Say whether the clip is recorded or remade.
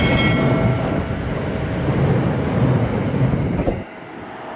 recorded